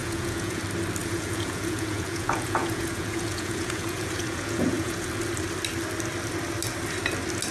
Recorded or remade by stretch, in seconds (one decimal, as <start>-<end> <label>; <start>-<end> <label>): 0.0-0.6 remade; 0.6-1.0 recorded; 1.0-5.1 remade; 5.1-7.5 recorded